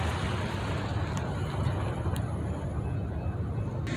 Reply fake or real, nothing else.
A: real